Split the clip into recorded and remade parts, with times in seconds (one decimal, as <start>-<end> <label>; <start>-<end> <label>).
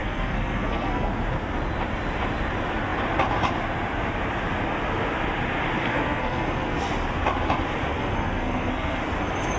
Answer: 0.0-1.1 remade; 1.1-5.9 recorded; 5.9-6.9 remade; 6.9-7.9 recorded; 7.9-9.0 remade; 9.0-9.6 recorded